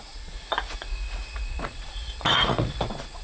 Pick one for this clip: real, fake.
fake